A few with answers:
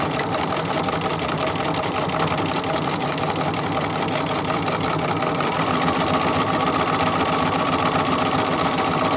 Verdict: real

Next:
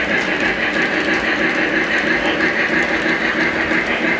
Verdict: real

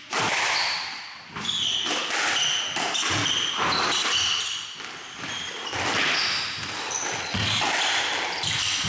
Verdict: real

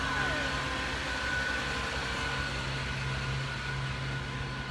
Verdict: real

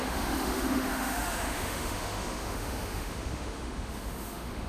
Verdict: fake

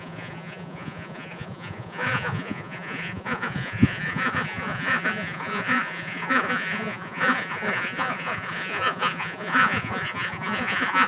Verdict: fake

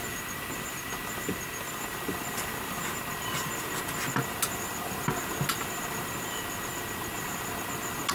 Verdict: real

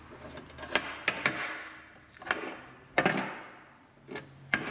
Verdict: real